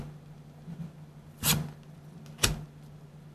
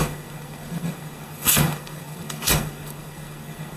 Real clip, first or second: first